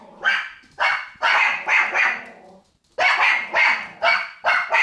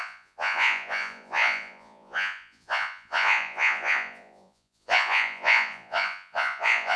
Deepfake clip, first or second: second